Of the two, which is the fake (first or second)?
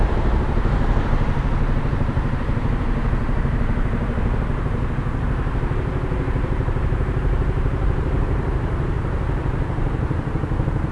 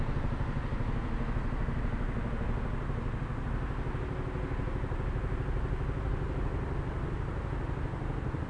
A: first